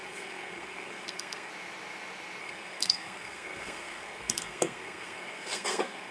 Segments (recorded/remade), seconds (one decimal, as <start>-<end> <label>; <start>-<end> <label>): 0.0-1.5 remade; 1.5-2.4 recorded; 2.4-6.1 remade